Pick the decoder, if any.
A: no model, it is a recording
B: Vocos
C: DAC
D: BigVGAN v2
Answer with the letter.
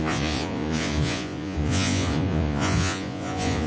B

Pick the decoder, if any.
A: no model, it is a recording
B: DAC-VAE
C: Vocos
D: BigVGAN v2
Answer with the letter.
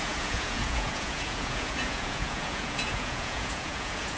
C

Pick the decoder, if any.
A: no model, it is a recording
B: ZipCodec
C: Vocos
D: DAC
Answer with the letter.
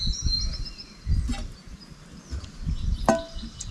A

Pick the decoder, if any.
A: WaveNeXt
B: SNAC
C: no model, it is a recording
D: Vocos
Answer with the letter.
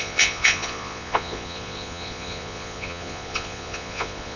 D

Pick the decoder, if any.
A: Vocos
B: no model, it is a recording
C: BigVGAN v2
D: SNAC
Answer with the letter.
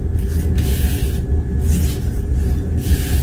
B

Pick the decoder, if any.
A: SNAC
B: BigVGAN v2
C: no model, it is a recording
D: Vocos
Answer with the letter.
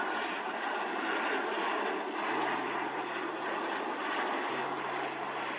C